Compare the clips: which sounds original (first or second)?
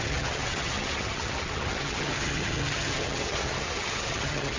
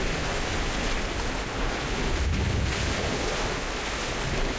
second